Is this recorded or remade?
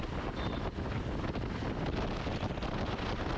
recorded